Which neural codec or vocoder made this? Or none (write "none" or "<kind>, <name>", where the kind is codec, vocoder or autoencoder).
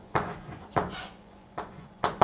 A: vocoder, Vocos